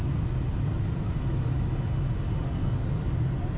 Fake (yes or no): no